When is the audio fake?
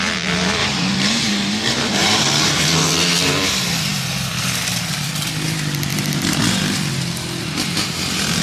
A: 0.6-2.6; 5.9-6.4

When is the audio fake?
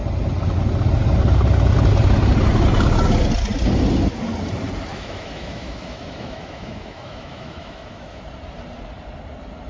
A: 4.9-8.2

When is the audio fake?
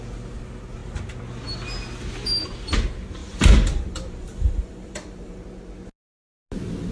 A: 3.2-5.4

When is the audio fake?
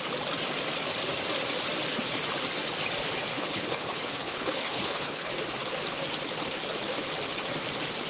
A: 3.3-5.3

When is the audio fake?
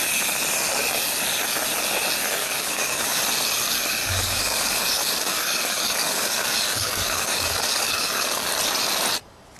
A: 2.4-3.2; 4.0-8.5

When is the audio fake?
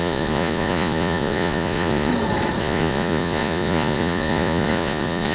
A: 0.0-2.1; 2.6-5.3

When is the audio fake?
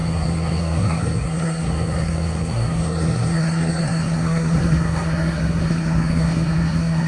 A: 0.0-7.1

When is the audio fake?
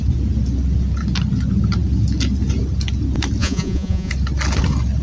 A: 3.4-4.1